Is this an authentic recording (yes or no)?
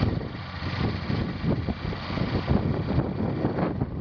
yes